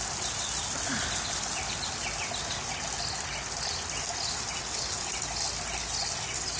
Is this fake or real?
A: real